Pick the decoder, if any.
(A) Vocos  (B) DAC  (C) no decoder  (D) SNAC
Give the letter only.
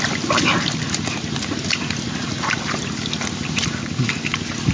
C